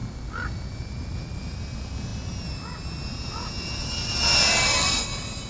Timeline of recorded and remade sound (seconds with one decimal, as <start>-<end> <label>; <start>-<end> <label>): 0.0-5.5 recorded